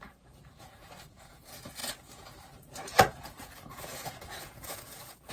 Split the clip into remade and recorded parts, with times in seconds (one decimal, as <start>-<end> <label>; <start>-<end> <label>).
0.0-5.3 remade